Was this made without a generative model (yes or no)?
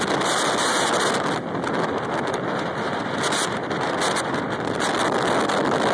yes